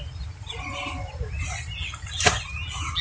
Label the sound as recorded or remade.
recorded